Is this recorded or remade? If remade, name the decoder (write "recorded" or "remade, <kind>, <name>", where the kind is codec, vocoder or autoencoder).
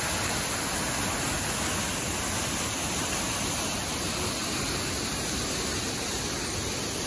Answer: recorded